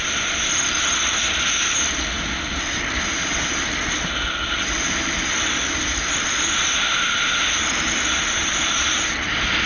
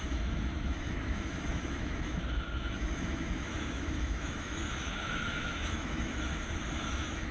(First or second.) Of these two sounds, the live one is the first